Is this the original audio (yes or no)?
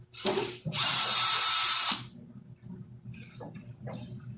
no